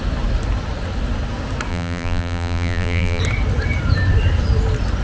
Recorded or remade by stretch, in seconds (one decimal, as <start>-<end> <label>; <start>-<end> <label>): 0.0-1.7 recorded; 1.7-3.2 remade; 3.2-5.0 recorded